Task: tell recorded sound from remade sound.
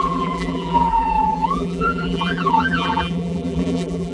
remade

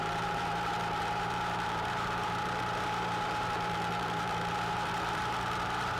remade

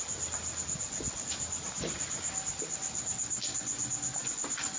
recorded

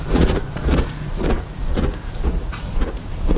remade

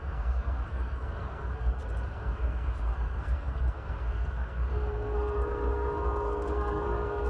remade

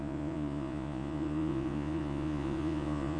remade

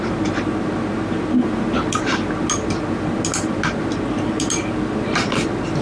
recorded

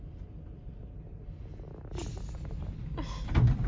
recorded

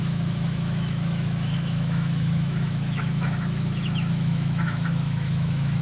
remade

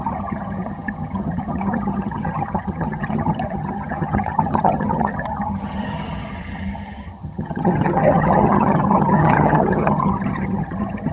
remade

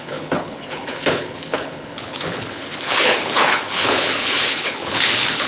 remade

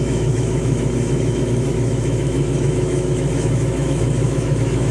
remade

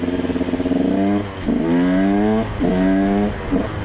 recorded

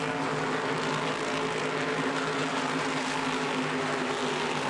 recorded